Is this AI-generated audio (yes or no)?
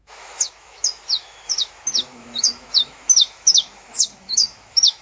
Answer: yes